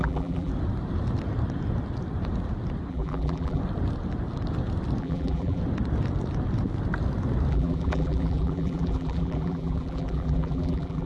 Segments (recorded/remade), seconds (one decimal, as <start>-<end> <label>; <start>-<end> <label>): 0.0-0.5 remade; 0.5-2.9 recorded; 2.9-3.6 remade; 3.6-5.0 recorded; 5.0-5.6 remade; 5.6-7.5 recorded; 7.5-11.1 remade